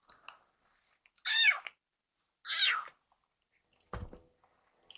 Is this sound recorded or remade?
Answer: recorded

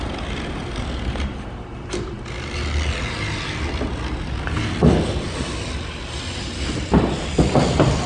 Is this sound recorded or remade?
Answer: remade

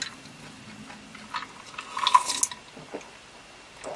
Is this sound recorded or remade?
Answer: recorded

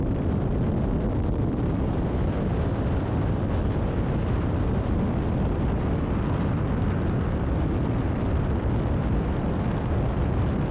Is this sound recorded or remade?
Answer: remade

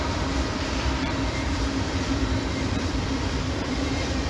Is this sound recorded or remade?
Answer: remade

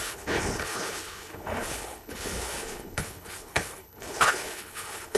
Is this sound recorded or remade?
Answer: remade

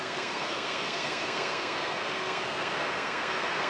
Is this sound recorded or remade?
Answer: remade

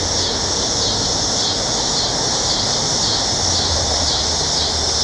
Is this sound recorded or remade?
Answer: recorded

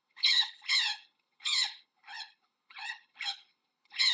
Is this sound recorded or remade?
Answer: remade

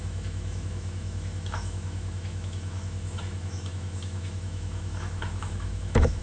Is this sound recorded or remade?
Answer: remade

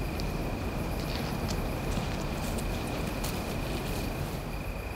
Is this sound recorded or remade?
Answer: recorded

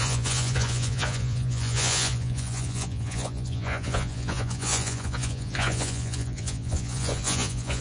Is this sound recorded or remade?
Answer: remade